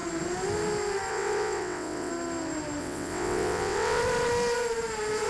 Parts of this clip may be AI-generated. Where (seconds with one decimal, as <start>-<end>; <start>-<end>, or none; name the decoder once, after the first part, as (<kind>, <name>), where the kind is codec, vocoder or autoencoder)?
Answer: 1.1-2.1 (vocoder, WaveNeXt); 2.8-4.0